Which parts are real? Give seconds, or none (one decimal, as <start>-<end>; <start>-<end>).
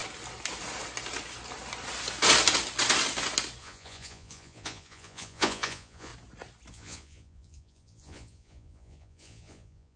0.0-3.6; 6.1-6.7